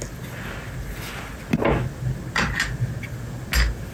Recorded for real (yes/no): yes